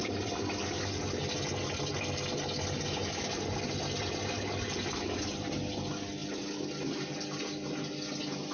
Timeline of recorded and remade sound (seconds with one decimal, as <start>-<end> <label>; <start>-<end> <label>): 0.0-8.5 recorded